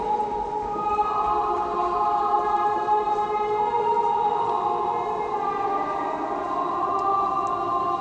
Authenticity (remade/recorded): recorded